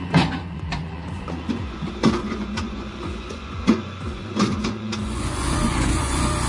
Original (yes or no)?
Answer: no